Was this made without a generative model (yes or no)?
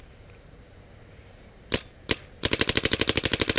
no